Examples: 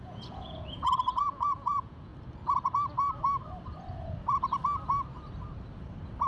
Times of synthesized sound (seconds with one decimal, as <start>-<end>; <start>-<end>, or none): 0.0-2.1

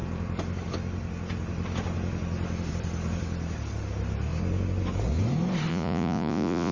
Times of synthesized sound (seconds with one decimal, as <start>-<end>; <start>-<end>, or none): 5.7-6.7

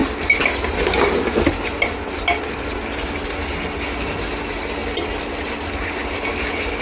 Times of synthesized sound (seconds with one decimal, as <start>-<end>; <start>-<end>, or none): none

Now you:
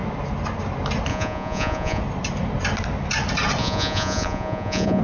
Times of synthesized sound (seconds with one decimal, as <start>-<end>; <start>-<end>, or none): 1.1-2.0; 3.6-5.0

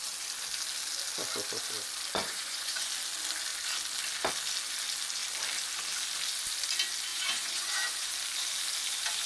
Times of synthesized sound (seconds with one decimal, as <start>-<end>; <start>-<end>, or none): 2.2-2.9; 7.1-8.1

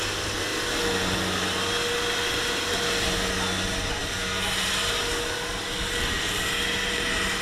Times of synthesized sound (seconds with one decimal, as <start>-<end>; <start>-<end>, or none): none